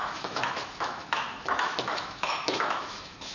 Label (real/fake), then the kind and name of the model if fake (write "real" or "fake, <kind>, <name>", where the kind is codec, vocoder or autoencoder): fake, autoencoder, DAC-VAE